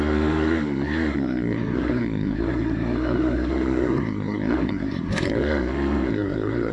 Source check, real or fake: fake